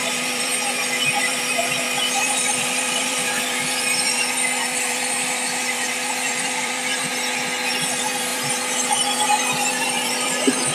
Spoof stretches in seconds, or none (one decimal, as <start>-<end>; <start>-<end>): 0.0-0.5; 1.2-7.1; 7.7-10.7